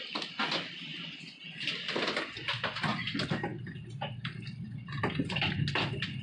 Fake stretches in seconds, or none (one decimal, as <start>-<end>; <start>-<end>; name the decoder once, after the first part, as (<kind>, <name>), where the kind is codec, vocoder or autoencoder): none